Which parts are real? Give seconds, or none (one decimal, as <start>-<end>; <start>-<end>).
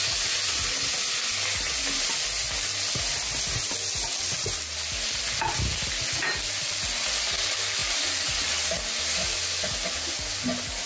0.0-10.9